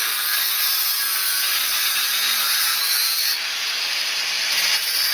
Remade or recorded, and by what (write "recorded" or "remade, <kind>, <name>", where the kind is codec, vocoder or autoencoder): remade, vocoder, BigVGAN v2